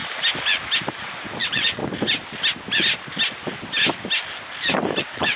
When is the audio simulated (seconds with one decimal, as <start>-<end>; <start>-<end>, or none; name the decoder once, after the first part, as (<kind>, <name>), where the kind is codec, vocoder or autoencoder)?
1.4-1.8 (vocoder, WaveNeXt); 5.0-5.4